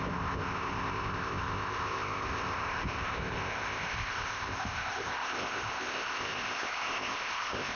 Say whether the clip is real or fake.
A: fake